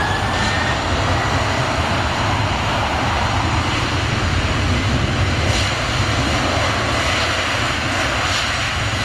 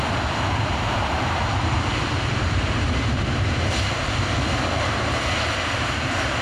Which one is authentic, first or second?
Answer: first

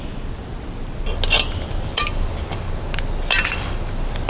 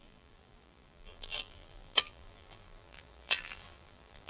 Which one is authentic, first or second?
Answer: first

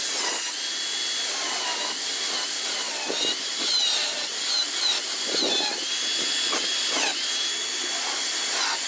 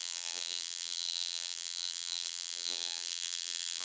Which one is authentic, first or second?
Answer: first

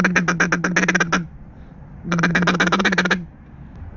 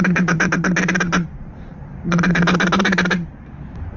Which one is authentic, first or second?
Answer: first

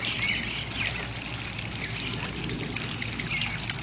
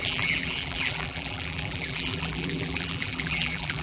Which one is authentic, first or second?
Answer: first